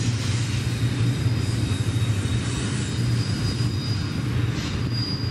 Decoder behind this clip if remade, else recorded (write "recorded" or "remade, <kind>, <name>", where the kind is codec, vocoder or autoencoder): recorded